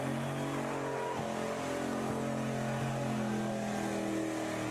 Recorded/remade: recorded